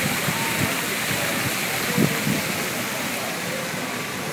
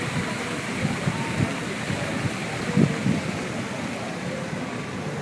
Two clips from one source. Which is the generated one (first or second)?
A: second